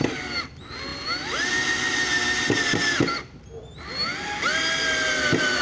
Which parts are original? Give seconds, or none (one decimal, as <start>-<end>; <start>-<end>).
0.0-5.6